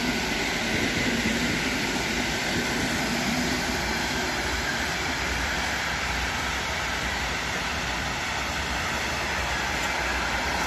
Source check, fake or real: real